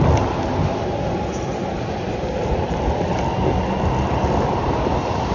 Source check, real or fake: real